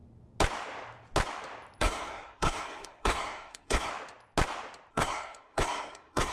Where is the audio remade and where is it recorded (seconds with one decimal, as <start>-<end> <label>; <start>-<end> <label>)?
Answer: 0.0-1.8 recorded; 1.8-3.9 remade; 3.9-4.9 recorded; 4.9-6.3 remade